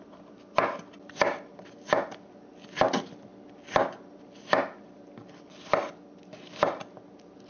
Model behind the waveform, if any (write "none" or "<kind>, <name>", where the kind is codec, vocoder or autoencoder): none